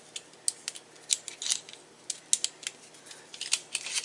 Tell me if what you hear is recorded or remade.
recorded